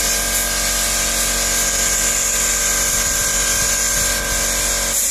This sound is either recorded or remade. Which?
recorded